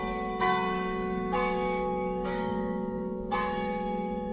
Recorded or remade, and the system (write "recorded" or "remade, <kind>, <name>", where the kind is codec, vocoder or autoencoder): remade, codec, DAC